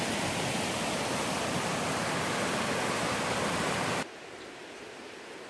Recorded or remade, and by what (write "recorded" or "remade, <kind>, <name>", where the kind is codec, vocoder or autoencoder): recorded